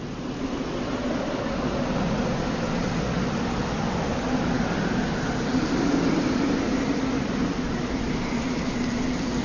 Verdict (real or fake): real